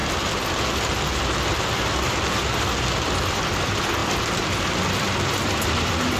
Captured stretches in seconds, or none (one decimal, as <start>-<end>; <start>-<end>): 0.0-6.2